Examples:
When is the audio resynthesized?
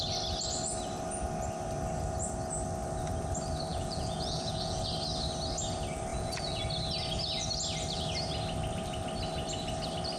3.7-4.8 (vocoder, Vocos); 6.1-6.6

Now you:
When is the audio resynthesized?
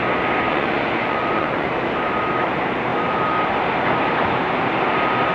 0.5-1.7 (vocoder, Vocos)